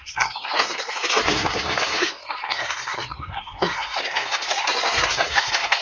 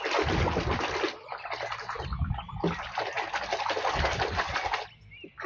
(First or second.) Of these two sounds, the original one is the second